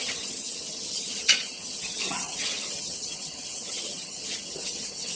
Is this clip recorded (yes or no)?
no